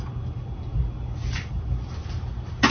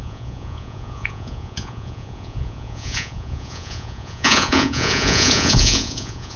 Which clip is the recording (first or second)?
first